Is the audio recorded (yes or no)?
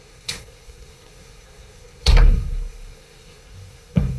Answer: no